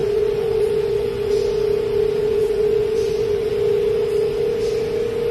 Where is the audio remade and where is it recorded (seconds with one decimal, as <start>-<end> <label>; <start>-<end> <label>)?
0.0-1.4 remade; 1.4-2.2 recorded; 2.2-3.5 remade; 3.5-5.3 recorded